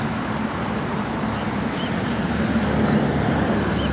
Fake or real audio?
real